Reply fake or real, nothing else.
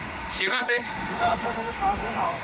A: fake